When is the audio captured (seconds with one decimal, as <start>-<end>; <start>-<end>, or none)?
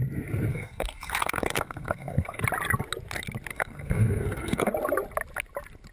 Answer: 0.0-0.5; 2.4-3.5; 4.7-5.9